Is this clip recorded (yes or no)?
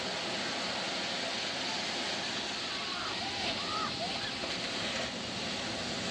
yes